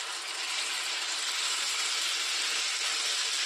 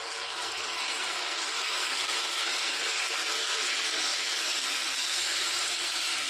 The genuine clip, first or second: first